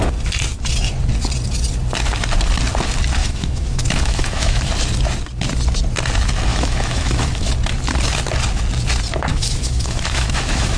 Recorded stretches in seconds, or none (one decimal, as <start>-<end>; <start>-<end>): 0.0-3.2; 4.7-6.5; 7.5-9.3